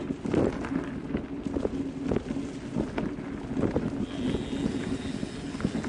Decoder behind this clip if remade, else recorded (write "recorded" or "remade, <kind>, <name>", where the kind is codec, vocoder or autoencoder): recorded